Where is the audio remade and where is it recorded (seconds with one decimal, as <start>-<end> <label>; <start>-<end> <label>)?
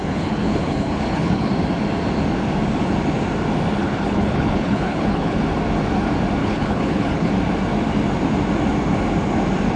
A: 0.0-1.5 remade; 1.5-3.8 recorded; 3.8-5.4 remade; 5.4-6.4 recorded; 6.4-7.3 remade; 7.3-9.8 recorded